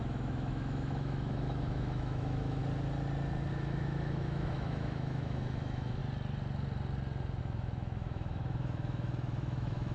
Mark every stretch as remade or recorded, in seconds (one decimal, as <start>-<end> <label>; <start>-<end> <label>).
0.0-2.6 remade; 2.6-3.5 recorded; 3.5-6.0 remade; 6.0-7.4 recorded; 7.4-9.9 remade